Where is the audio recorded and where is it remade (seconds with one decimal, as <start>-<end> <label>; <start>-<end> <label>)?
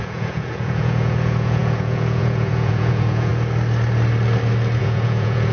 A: 0.0-3.3 remade; 3.3-4.8 recorded; 4.8-5.5 remade